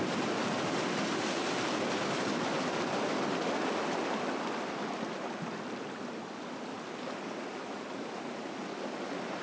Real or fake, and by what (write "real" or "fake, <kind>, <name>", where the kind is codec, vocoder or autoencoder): real